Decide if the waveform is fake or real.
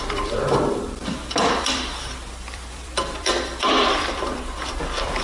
fake